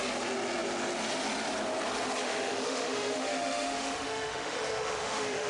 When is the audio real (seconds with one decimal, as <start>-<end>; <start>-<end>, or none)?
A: 0.0-2.2